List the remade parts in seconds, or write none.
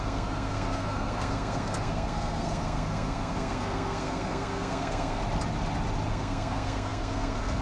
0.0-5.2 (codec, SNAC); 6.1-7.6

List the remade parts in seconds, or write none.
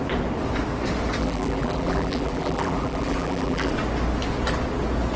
1.2-3.7 (vocoder, BigVGAN v2)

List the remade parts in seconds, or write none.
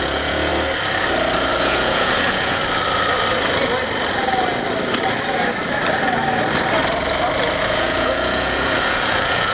0.0-0.5 (vocoder, Vocos); 1.5-2.6; 7.6-9.5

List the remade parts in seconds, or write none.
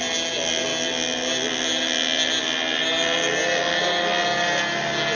none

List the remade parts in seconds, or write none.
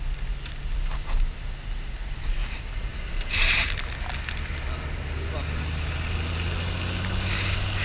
none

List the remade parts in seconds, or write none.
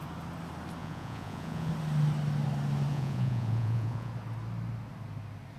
0.8-1.7 (vocoder, Vocos); 2.9-4.1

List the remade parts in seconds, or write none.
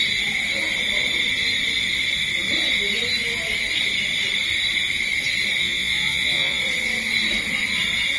5.6-6.6 (vocoder, Vocos)